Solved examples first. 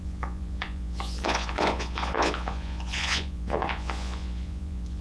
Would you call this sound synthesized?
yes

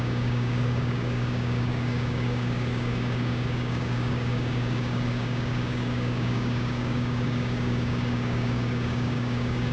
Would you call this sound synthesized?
yes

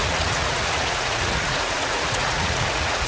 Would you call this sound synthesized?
yes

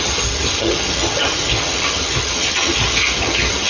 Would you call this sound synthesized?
yes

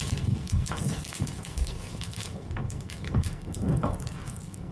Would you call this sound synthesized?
yes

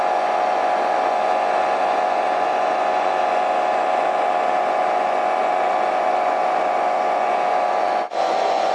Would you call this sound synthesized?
yes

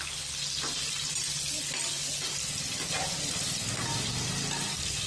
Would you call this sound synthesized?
no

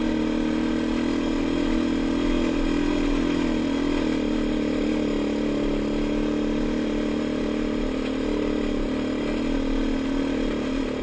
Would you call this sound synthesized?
no